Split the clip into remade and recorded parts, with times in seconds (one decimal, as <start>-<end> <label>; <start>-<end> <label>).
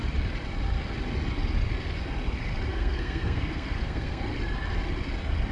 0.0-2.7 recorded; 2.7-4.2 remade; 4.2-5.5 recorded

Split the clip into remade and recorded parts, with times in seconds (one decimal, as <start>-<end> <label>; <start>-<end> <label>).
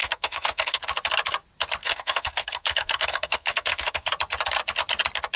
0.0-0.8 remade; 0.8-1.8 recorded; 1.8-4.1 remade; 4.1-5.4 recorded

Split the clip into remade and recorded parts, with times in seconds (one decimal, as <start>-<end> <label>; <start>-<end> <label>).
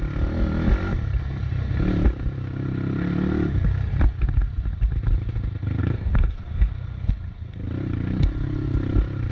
0.0-5.8 recorded; 5.8-7.1 remade; 7.1-9.3 recorded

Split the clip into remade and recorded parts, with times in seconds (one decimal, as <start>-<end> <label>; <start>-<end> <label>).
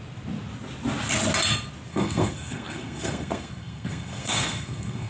0.0-1.9 recorded; 1.9-5.1 remade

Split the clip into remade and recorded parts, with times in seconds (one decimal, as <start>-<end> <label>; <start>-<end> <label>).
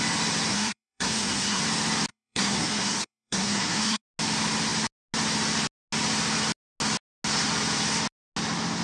0.0-0.5 recorded; 0.5-1.6 remade; 1.6-2.1 recorded; 2.1-4.0 remade; 4.0-8.8 recorded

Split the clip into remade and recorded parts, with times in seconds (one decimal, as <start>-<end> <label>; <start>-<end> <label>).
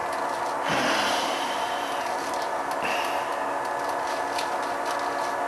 0.0-5.5 recorded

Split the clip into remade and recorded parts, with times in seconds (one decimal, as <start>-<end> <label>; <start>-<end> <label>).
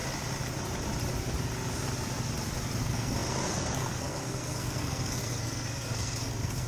0.0-2.8 recorded; 2.8-6.7 remade